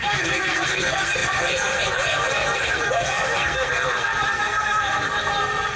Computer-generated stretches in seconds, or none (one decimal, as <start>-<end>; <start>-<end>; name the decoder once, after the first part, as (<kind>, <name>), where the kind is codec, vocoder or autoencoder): 0.0-5.8 (codec, SNAC)